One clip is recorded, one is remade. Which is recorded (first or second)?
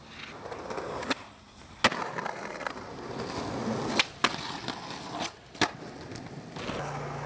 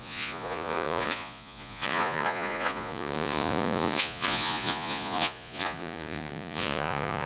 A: first